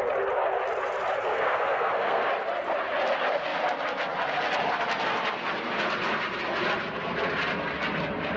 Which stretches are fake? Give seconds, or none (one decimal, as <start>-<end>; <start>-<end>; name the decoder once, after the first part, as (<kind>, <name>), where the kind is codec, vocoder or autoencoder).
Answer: 1.3-2.3 (codec, SNAC)